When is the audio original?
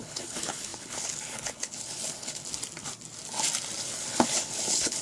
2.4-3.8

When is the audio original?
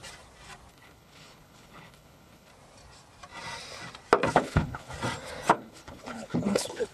0.0-0.7; 2.5-4.3; 4.9-5.5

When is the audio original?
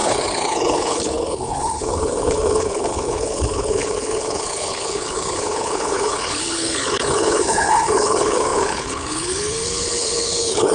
none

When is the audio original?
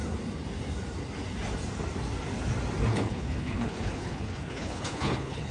0.0-2.9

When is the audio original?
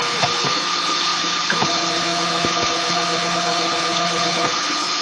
none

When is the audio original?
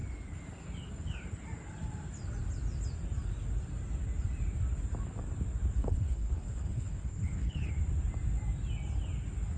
0.0-5.8; 7.7-9.6